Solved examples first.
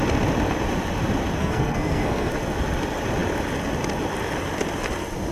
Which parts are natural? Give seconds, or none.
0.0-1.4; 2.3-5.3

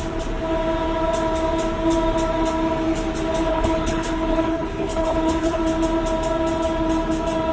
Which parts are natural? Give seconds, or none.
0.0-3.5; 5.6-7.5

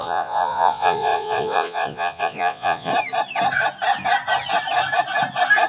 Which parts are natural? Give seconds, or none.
2.9-5.7

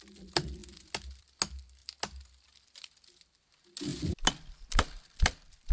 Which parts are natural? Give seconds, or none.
0.0-5.7

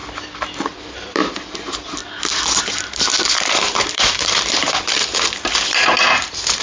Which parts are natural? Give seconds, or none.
0.0-0.8; 2.0-2.6

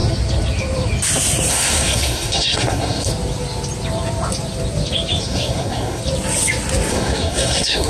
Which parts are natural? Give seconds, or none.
0.0-1.5; 3.1-5.2; 6.0-6.9

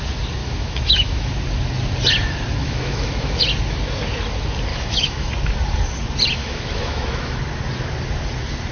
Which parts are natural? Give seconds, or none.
0.0-0.4; 1.3-2.6; 3.4-4.7; 5.3-6.4; 7.4-8.7